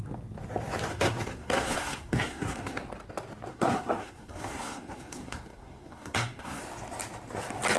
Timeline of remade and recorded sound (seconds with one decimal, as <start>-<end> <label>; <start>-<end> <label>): 0.0-0.9 recorded; 0.9-2.8 remade; 2.8-3.5 recorded; 3.5-6.6 remade; 6.6-7.8 recorded